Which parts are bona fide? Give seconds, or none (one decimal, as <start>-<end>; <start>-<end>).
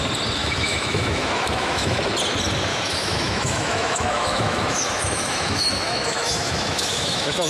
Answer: 0.0-0.4; 2.0-2.7